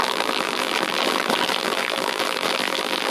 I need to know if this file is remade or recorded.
remade